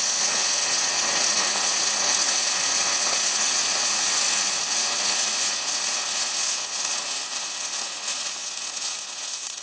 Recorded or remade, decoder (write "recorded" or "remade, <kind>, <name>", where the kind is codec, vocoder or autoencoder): remade, vocoder, Vocos